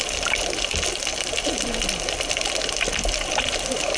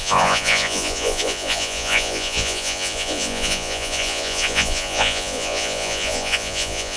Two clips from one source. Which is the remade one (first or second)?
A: second